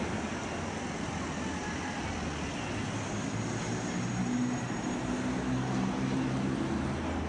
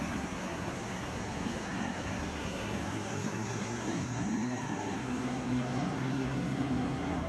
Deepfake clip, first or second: second